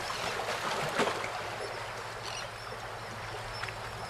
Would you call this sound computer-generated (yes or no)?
no